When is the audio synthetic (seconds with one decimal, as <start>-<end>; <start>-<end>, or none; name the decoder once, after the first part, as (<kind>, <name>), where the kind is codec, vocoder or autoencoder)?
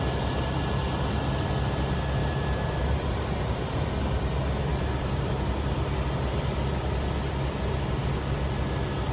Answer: 2.2-3.9 (vocoder, BigVGAN v2); 4.7-5.5